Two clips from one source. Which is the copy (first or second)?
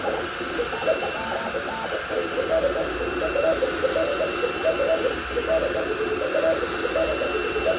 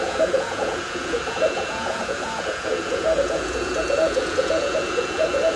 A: second